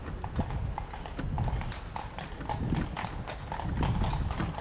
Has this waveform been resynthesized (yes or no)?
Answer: no